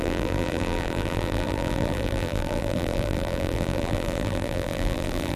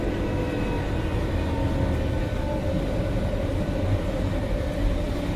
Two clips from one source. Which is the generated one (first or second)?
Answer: first